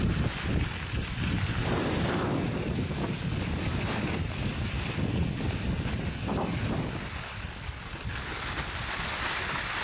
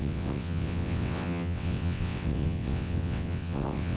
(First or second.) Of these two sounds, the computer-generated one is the second